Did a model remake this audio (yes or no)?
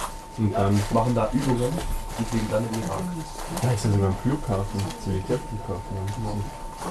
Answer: no